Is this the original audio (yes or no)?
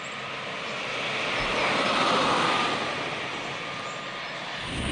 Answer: yes